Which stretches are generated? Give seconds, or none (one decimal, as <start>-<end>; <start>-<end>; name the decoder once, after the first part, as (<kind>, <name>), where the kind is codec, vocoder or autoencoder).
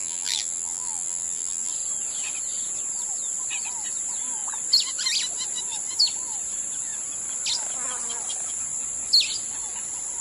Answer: 0.0-1.7 (vocoder, BigVGAN v2)